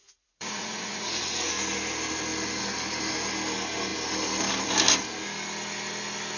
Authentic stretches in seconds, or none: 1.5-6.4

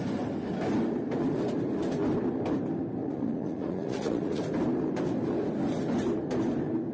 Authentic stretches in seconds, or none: 0.0-3.0; 4.4-6.9